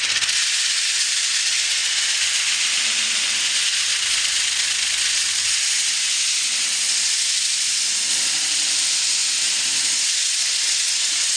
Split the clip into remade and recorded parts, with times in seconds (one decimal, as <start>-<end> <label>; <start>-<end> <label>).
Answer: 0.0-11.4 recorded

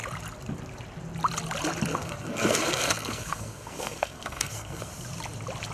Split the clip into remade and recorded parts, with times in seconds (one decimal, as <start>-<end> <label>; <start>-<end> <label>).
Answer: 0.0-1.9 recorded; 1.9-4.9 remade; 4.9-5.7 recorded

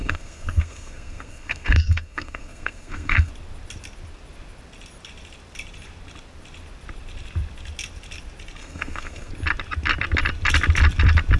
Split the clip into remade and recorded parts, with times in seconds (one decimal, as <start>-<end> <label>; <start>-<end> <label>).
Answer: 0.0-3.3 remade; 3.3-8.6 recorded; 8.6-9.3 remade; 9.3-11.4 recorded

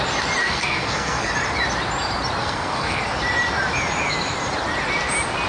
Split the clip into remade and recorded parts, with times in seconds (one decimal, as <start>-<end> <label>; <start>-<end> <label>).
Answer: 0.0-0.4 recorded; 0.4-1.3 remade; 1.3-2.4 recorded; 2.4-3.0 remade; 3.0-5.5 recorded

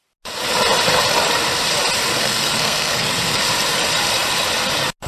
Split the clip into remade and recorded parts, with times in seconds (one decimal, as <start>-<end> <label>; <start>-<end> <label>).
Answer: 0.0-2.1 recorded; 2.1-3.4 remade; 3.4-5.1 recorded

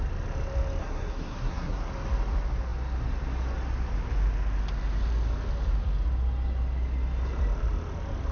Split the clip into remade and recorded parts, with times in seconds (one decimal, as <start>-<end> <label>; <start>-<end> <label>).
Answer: 0.0-0.8 recorded; 0.8-1.9 remade; 1.9-8.3 recorded

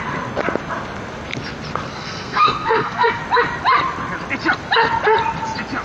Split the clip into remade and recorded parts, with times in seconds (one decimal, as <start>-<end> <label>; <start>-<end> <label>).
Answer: 0.0-2.0 recorded; 2.0-3.2 remade; 3.2-5.8 recorded